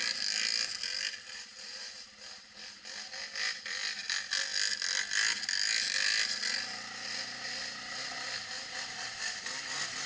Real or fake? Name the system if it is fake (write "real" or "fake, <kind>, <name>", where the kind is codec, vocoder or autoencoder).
real